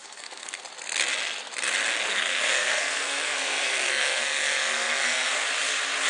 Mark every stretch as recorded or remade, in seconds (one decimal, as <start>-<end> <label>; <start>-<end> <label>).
0.0-0.6 remade; 0.6-2.1 recorded; 2.1-5.4 remade; 5.4-6.1 recorded